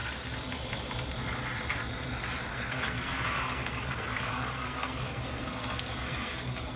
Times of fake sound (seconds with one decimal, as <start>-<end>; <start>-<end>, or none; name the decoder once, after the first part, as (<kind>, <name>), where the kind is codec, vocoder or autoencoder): 2.5-6.8 (codec, SNAC)